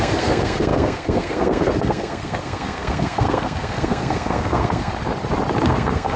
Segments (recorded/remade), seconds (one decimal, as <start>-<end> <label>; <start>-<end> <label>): 0.0-4.9 remade; 4.9-5.6 recorded; 5.6-6.2 remade